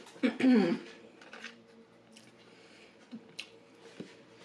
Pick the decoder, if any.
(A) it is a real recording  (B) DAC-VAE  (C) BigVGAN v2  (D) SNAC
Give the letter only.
C